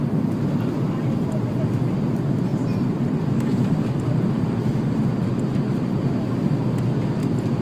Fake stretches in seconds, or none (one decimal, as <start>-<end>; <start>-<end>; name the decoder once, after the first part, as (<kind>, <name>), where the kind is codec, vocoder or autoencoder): none